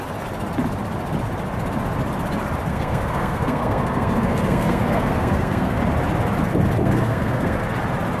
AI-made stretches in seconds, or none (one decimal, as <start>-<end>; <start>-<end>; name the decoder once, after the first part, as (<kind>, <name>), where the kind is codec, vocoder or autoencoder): 2.7-5.8 (codec, SNAC); 6.8-7.6